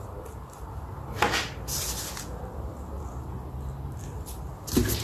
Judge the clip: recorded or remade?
recorded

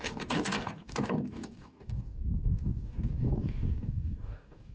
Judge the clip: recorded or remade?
remade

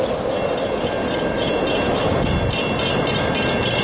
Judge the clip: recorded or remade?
recorded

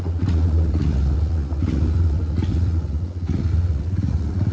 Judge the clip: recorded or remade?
remade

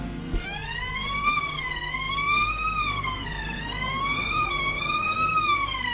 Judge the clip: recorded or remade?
remade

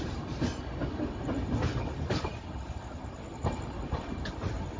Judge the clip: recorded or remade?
recorded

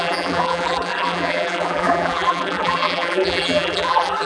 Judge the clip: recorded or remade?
remade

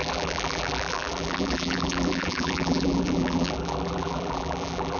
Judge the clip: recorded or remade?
remade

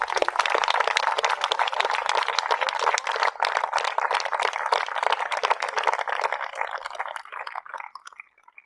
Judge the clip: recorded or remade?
recorded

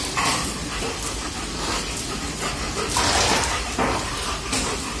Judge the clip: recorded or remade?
recorded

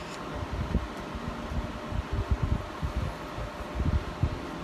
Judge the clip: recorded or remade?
recorded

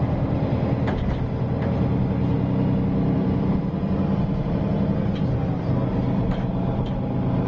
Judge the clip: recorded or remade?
recorded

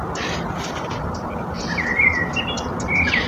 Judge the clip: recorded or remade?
recorded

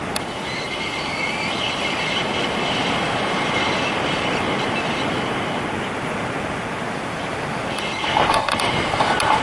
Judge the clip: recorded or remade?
recorded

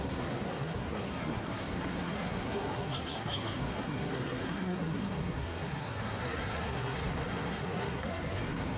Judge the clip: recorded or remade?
remade